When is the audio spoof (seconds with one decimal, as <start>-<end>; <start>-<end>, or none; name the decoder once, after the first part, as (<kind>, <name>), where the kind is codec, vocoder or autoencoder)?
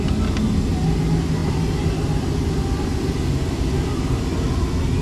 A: none